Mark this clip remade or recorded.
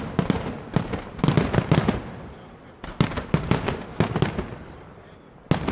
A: recorded